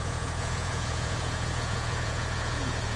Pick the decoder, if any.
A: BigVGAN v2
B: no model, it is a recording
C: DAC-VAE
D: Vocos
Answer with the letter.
D